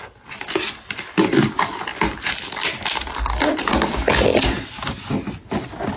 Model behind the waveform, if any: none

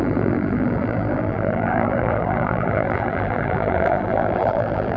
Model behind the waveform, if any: vocoder, BigVGAN v2